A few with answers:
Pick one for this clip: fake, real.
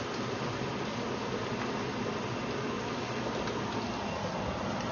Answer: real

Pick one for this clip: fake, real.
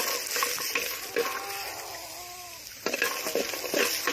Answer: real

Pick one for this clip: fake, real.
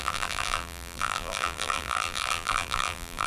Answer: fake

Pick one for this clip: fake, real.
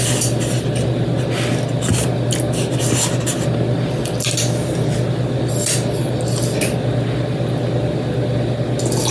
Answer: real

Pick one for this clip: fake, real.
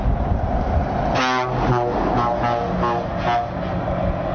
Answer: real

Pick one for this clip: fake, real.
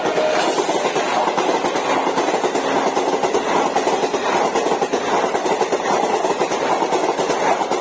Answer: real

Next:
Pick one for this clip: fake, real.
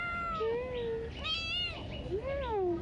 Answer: real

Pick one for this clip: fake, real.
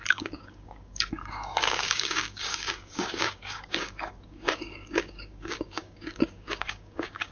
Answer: fake